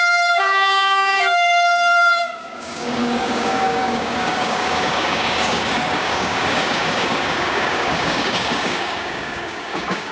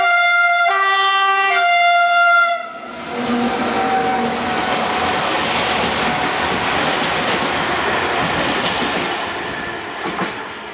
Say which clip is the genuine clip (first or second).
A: second